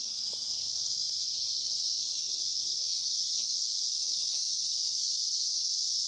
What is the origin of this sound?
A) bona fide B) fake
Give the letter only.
B